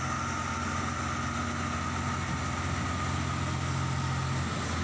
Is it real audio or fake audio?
real